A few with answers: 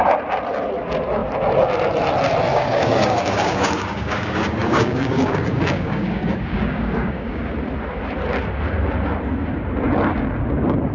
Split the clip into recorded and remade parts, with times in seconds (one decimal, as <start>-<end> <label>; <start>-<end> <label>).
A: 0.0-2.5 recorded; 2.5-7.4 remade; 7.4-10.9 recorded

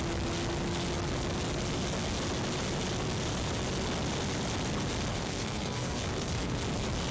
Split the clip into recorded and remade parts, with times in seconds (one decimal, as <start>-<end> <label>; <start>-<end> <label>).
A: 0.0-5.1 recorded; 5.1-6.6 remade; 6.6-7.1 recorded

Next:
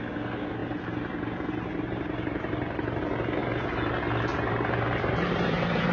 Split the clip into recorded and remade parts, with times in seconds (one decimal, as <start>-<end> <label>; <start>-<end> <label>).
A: 0.0-0.6 recorded; 0.6-3.0 remade; 3.0-3.4 recorded; 3.4-3.9 remade; 3.9-4.3 recorded; 4.3-5.9 remade